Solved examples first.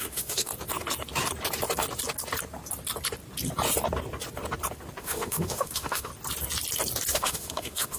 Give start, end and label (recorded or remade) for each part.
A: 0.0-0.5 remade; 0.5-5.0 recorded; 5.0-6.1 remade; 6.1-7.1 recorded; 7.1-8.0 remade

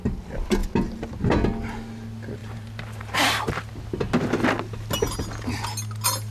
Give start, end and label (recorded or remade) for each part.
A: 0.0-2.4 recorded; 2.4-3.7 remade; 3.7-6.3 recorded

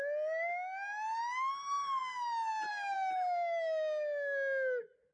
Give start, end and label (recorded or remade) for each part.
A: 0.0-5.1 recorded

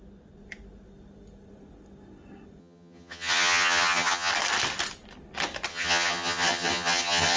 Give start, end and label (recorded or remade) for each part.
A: 0.0-2.6 recorded; 2.6-4.3 remade; 4.3-5.7 recorded; 5.7-7.4 remade

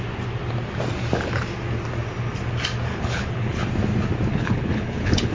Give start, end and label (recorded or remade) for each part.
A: 0.0-2.9 recorded; 2.9-3.7 remade; 3.7-4.3 recorded; 4.3-5.3 remade

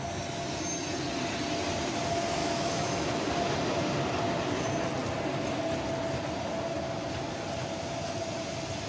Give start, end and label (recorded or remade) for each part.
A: 0.0-2.4 recorded; 2.4-3.1 remade; 3.1-8.9 recorded